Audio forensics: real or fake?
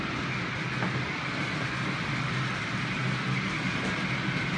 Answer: real